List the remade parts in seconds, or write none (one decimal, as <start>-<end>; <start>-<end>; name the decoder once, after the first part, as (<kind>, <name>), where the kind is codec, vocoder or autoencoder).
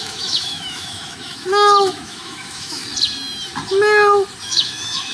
0.0-2.8 (autoencoder, DAC-VAE); 4.4-5.1